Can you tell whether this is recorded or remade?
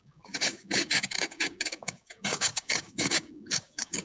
remade